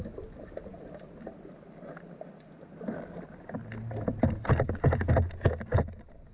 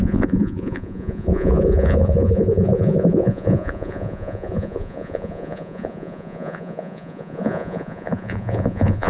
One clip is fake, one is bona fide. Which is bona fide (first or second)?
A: first